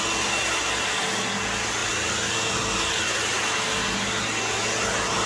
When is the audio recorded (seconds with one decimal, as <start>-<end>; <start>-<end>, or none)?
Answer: 0.0-5.3